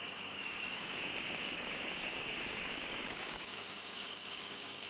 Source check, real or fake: fake